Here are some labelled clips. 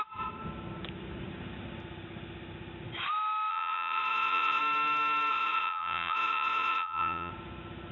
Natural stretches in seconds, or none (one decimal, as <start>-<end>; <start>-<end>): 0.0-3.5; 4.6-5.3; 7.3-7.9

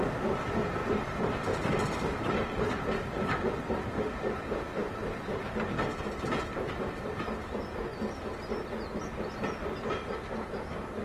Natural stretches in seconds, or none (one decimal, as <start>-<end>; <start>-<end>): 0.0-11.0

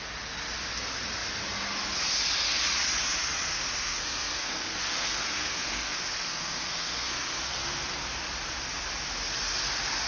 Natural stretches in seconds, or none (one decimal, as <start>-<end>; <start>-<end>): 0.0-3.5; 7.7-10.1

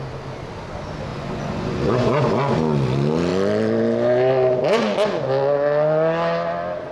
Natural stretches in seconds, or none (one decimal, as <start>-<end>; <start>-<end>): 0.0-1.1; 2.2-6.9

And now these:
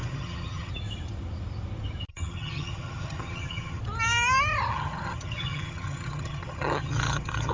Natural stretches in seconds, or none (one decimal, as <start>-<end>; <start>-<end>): 0.7-2.1; 3.8-4.7

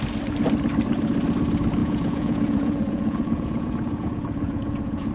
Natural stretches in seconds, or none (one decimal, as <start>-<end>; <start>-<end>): 0.0-1.8